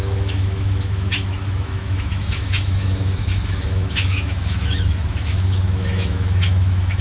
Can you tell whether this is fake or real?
fake